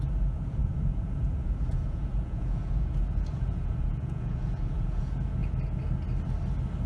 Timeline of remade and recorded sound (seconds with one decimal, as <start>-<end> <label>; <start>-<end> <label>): 0.0-5.4 remade; 5.4-6.9 recorded